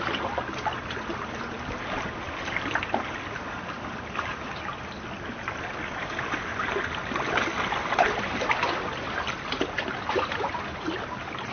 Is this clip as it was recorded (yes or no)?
yes